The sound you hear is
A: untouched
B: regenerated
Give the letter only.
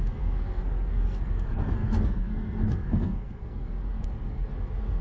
B